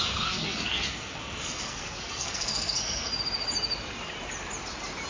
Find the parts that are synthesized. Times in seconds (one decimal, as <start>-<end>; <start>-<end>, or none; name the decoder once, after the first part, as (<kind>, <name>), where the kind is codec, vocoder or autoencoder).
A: 0.0-3.1 (codec, SNAC)